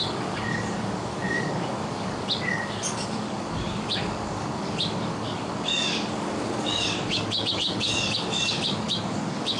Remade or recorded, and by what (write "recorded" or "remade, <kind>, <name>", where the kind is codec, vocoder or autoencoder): remade, codec, DAC